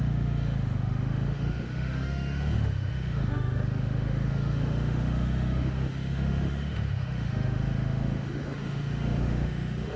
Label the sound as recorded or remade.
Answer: remade